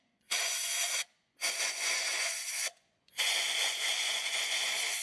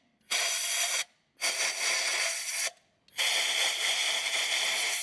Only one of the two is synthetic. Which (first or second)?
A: first